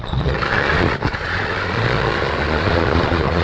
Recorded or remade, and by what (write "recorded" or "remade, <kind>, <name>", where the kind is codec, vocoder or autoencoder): remade, vocoder, Vocos